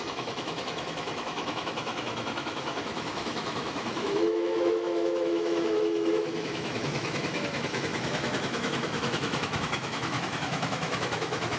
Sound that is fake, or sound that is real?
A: fake